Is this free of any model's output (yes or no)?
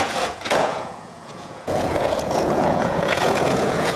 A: no